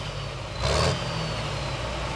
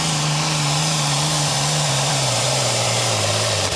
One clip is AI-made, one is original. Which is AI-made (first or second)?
second